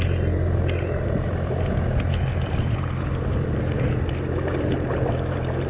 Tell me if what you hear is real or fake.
real